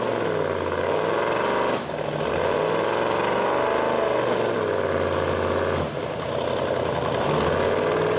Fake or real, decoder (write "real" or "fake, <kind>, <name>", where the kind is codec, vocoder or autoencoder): real